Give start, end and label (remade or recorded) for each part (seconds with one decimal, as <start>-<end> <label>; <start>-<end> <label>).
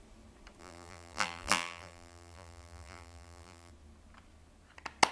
0.0-0.6 recorded; 0.6-3.7 remade; 3.7-5.1 recorded